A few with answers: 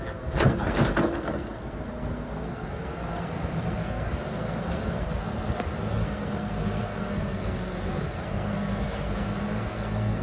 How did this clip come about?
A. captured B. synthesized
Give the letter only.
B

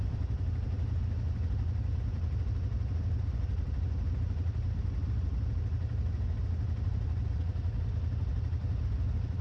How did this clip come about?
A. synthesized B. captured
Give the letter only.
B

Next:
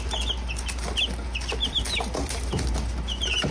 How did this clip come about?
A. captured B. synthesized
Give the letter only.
A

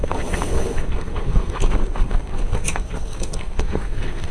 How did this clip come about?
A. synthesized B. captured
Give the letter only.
A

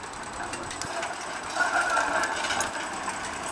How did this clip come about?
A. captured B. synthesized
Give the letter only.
A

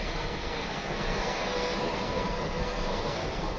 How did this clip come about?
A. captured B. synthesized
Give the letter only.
B